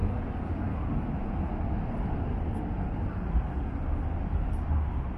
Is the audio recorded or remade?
recorded